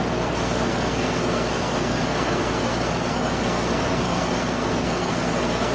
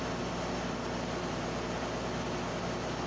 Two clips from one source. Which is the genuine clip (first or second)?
second